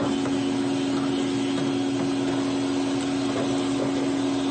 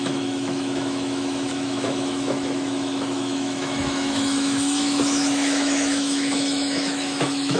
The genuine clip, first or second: first